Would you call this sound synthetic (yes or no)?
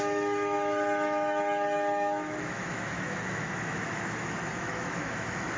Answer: yes